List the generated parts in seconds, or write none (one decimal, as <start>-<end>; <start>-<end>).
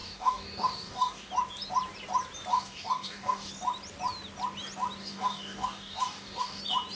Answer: 0.0-1.3; 2.5-3.5; 5.0-6.6